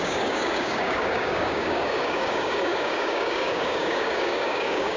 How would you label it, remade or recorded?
remade